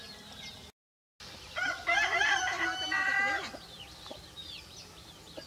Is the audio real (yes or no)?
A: yes